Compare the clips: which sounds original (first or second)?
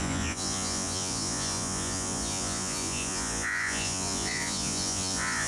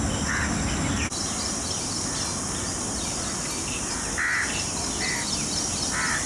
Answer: second